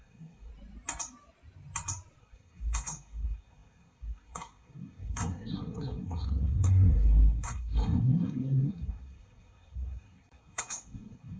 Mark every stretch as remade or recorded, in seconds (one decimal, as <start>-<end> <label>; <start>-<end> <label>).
0.0-0.5 remade; 0.5-2.2 recorded; 2.2-11.4 remade

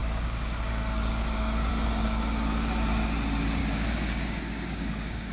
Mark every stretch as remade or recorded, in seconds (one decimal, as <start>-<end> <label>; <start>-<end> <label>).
0.0-1.7 remade; 1.7-3.6 recorded; 3.6-5.3 remade